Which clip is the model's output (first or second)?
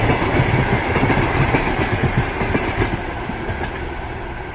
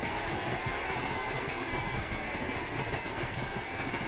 second